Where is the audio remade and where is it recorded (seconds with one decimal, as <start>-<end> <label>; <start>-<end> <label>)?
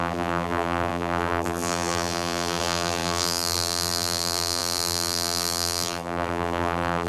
0.0-7.1 remade